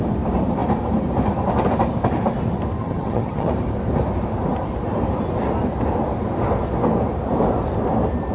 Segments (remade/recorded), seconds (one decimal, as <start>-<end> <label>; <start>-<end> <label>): 0.0-2.8 recorded; 2.8-3.5 remade; 3.5-8.3 recorded